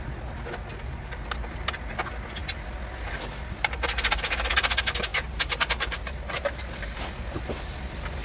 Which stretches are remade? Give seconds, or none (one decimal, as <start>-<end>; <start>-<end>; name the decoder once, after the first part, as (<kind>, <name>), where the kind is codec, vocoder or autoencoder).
none